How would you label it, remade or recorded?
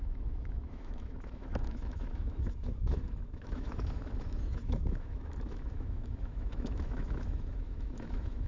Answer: remade